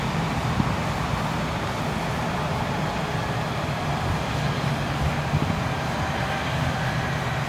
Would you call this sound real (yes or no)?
yes